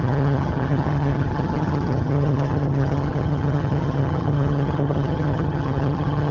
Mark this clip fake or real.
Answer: fake